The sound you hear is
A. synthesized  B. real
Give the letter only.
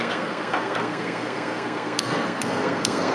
A